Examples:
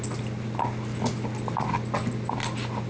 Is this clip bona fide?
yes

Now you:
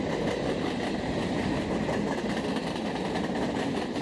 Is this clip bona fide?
no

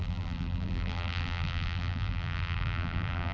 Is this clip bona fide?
no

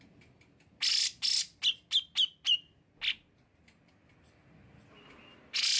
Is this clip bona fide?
yes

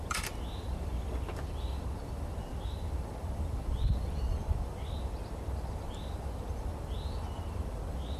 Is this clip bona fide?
no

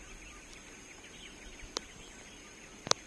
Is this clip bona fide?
yes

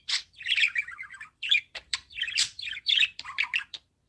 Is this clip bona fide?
no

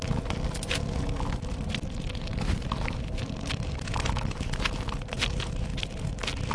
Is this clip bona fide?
yes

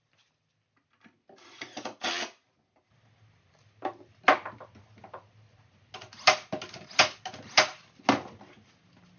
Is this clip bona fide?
yes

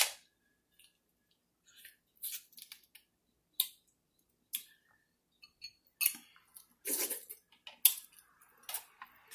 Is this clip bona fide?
yes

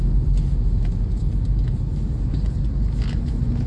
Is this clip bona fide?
yes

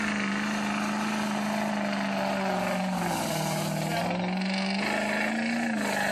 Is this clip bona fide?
yes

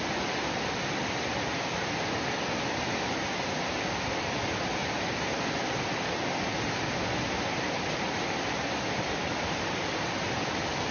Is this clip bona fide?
yes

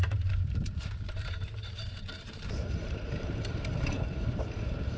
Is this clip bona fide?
no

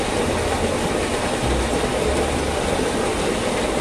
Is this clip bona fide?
yes